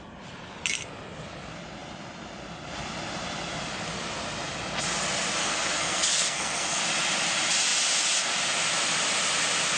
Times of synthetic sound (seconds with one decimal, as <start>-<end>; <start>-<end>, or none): 5.4-6.8